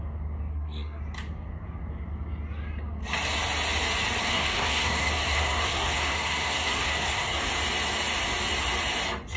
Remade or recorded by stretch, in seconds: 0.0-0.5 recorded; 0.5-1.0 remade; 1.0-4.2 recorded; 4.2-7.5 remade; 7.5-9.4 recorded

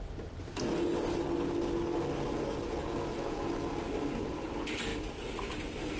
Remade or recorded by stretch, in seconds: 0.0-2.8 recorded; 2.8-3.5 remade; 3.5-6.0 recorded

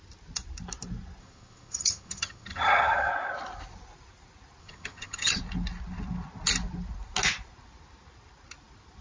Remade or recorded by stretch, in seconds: 0.0-1.2 recorded; 1.2-3.1 remade; 3.1-4.6 recorded; 4.6-5.4 remade; 5.4-9.0 recorded

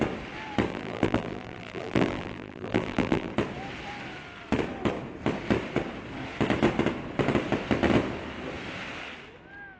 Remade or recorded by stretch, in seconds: 0.0-0.7 recorded; 0.7-3.3 remade; 3.3-9.8 recorded

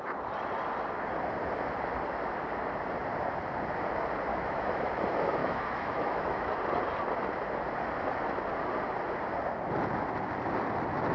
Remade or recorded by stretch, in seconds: 0.0-4.3 recorded; 4.3-5.0 remade; 5.0-5.4 recorded; 5.4-6.6 remade; 6.6-11.1 recorded

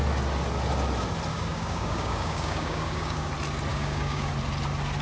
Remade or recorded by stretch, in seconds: 0.0-1.3 recorded; 1.3-3.3 remade; 3.3-3.7 recorded; 3.7-4.3 remade; 4.3-5.0 recorded